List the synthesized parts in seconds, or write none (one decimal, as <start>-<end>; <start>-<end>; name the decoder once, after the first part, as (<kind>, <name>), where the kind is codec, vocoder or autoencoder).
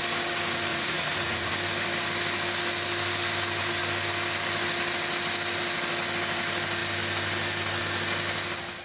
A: 0.7-1.5 (vocoder, Vocos)